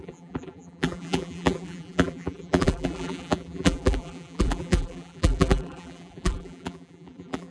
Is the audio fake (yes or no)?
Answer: yes